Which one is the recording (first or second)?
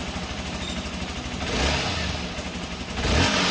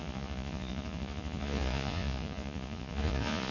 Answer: first